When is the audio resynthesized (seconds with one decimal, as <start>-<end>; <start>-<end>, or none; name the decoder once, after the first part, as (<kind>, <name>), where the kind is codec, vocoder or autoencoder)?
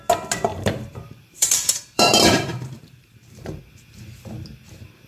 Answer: 0.5-3.6 (vocoder, BigVGAN v2)